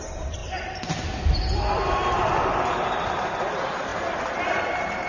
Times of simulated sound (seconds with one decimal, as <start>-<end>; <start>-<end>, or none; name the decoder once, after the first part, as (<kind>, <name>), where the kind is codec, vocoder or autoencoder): 0.0-0.4 (vocoder, BigVGAN v2); 3.5-5.1